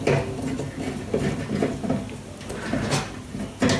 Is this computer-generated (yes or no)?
no